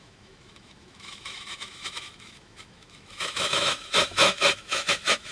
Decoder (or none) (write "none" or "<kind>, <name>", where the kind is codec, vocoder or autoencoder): autoencoder, DAC-VAE